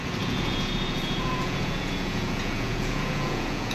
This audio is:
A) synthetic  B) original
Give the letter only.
A